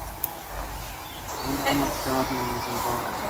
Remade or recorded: recorded